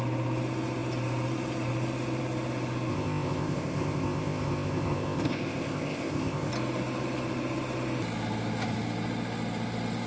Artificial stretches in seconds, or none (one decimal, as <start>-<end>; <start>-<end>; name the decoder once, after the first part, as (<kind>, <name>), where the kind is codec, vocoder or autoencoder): 2.9-6.5 (codec, ZipCodec)